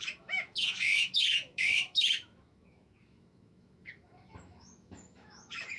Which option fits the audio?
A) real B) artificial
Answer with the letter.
B